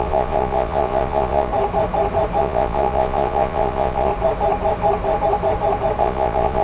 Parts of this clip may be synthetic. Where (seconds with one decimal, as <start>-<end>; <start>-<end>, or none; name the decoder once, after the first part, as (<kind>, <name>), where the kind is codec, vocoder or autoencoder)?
0.0-1.5 (vocoder, Vocos); 2.4-4.1; 6.0-6.6